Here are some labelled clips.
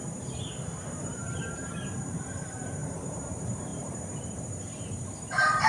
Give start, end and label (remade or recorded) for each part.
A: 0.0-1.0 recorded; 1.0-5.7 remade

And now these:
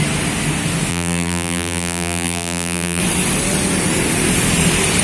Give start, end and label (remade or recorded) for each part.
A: 0.0-0.9 recorded; 0.9-3.0 remade; 3.0-5.0 recorded

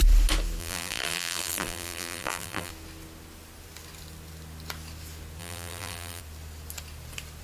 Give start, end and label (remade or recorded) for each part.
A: 0.0-0.6 recorded; 0.6-2.7 remade; 2.7-5.4 recorded; 5.4-6.2 remade; 6.2-7.4 recorded

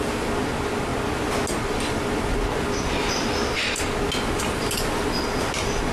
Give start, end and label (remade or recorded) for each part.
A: 0.0-5.9 recorded